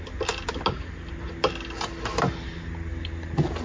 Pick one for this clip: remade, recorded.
recorded